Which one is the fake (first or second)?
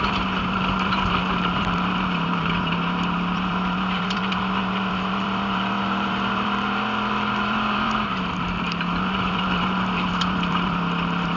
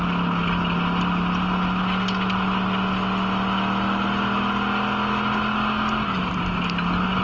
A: first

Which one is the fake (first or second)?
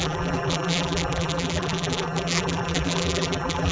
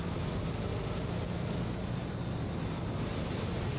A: first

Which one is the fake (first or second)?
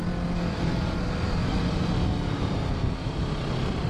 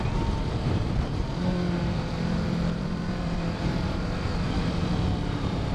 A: second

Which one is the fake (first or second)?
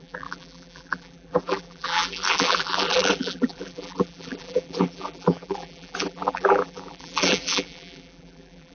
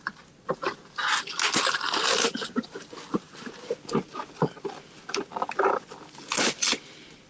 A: first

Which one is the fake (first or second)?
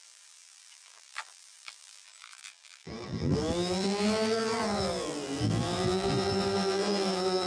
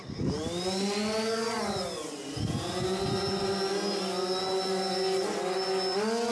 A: first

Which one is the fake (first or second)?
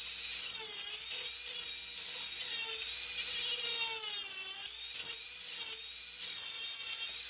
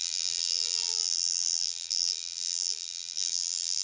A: second